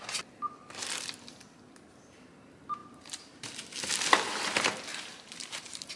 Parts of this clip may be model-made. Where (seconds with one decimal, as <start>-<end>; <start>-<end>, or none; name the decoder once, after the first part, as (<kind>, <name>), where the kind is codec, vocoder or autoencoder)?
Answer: 2.8-3.3 (vocoder, BigVGAN v2); 4.9-6.0